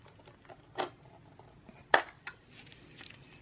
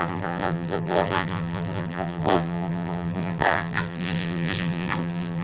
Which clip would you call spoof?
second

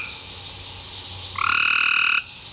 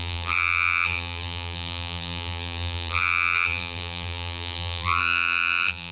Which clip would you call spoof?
second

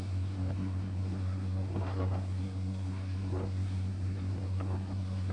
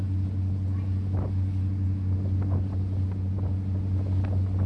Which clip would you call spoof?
first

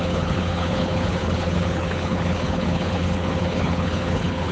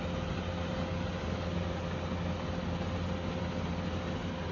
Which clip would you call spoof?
first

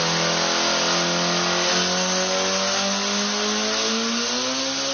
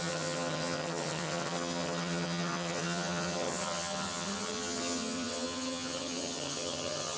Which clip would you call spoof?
second